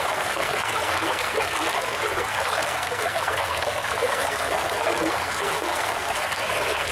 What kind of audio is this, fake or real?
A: fake